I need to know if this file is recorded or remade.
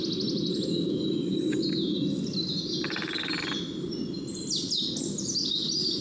recorded